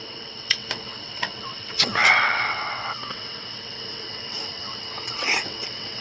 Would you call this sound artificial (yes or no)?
yes